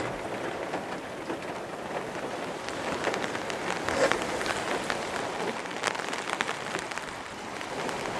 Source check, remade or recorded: recorded